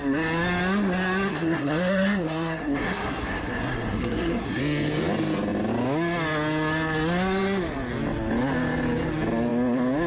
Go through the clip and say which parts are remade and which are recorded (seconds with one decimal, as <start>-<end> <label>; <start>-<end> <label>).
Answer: 0.0-1.3 recorded; 1.3-4.6 remade; 4.6-10.1 recorded